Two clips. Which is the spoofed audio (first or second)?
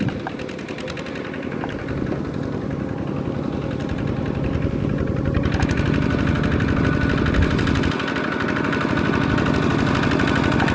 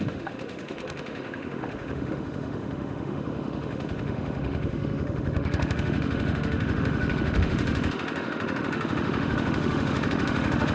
second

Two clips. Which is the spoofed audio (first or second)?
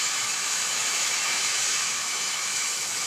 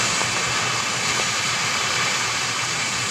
first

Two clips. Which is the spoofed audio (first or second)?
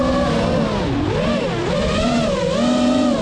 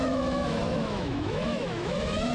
second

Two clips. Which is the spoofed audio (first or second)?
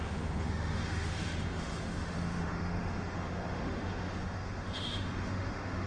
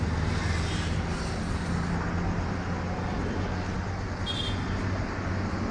first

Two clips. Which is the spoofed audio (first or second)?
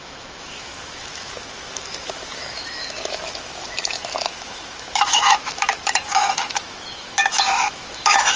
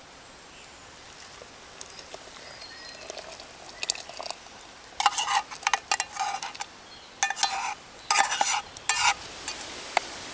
first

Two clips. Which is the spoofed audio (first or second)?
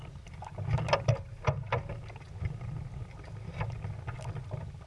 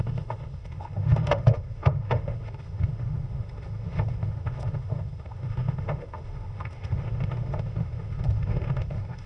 second